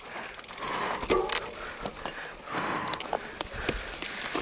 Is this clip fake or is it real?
real